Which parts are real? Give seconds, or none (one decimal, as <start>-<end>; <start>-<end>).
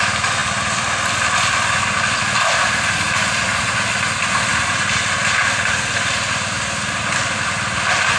0.0-8.2